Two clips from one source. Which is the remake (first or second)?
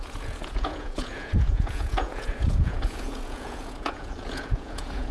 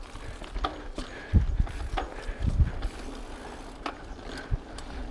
first